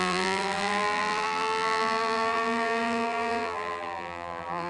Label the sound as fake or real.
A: fake